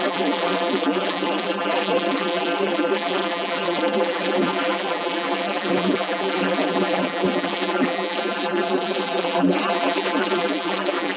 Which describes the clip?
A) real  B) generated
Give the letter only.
B